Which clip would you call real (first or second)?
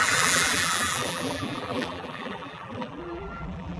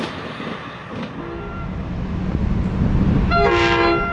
second